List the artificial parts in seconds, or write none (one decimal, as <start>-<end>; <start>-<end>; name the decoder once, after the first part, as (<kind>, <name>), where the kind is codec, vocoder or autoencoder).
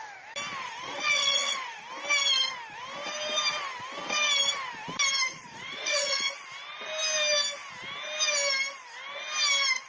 0.6-1.8 (vocoder, Vocos); 5.3-6.3